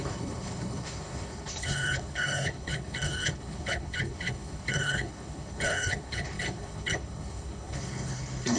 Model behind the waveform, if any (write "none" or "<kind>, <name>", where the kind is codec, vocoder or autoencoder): codec, HILCodec